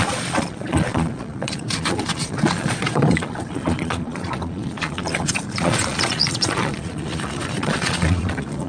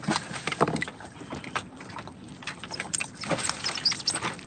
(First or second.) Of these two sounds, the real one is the second